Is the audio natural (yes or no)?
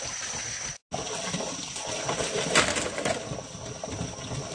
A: yes